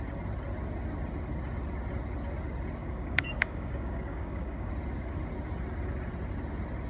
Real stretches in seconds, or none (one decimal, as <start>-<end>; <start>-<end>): 0.0-2.8; 4.7-6.9